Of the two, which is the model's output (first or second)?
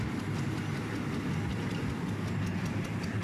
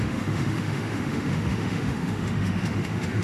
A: second